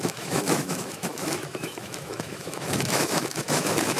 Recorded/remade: remade